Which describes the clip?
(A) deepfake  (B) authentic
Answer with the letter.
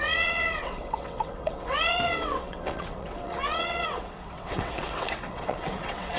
A